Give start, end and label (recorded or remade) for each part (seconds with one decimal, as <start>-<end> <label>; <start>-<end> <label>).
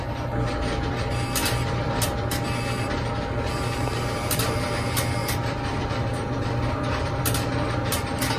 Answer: 0.0-1.4 recorded; 1.4-1.9 remade; 1.9-5.2 recorded; 5.2-7.2 remade; 7.2-8.4 recorded